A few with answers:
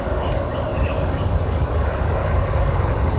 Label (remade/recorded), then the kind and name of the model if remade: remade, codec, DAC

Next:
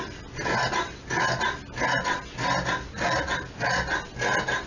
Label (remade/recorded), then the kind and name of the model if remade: recorded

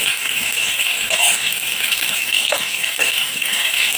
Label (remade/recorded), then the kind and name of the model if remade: remade, codec, DAC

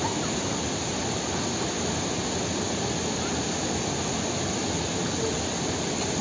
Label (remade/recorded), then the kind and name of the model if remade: recorded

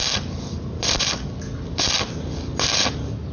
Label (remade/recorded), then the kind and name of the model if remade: recorded